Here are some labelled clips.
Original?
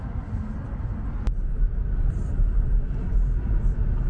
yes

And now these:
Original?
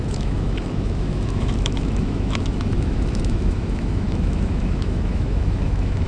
no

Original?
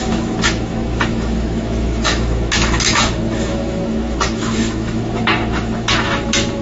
no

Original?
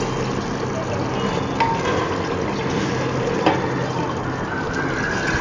yes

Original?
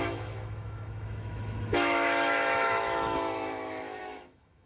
no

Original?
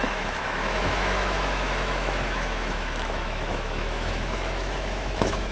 no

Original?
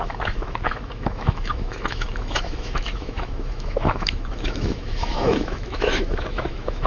no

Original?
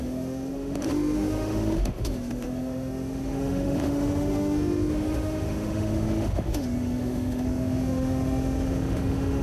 no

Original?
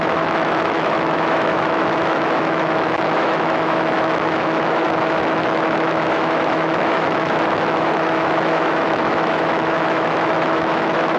no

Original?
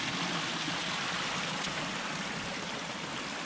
yes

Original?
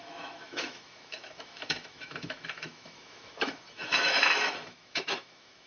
no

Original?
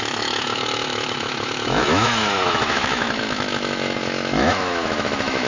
no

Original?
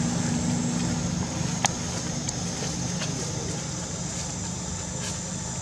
yes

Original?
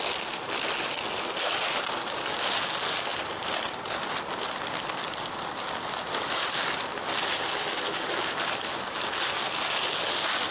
yes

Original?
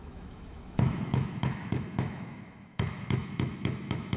no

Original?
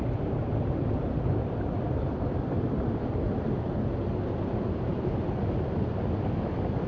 yes